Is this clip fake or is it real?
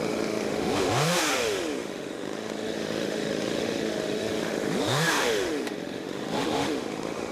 fake